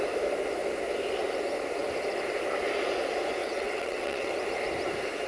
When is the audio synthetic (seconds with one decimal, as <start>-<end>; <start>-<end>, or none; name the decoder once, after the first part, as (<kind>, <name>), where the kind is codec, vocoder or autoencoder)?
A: 3.4-4.3 (vocoder, WaveNeXt)